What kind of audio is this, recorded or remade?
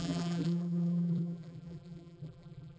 remade